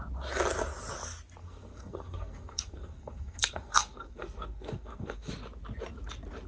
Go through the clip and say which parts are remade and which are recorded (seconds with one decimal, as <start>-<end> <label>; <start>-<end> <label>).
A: 0.0-1.4 recorded; 1.4-5.3 remade; 5.3-6.5 recorded